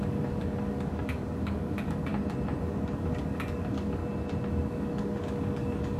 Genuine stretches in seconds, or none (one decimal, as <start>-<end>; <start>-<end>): 2.1-2.6; 4.0-4.5